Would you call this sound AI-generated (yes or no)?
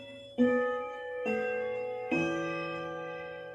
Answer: yes